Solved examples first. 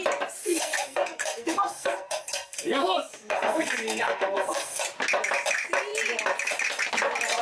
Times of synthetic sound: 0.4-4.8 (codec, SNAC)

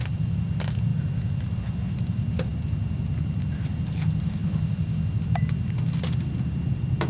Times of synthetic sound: 0.0-0.9 (vocoder, BigVGAN v2); 1.9-4.4; 5.1-7.1

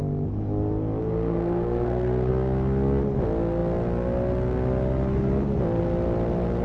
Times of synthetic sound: 1.0-2.3 (codec, SNAC)

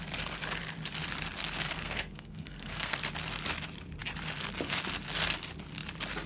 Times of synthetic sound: 1.7-3.0 (codec, SNAC)

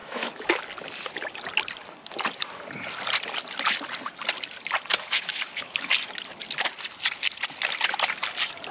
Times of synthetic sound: 0.0-0.6 (autoencoder, DAC-VAE); 4.9-5.9

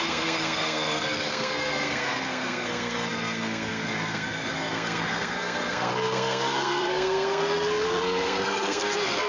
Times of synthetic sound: 0.0-9.3 (codec, SNAC)

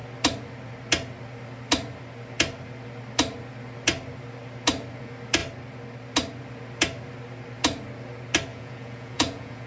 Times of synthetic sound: 8.5-9.7 (vocoder, Vocos)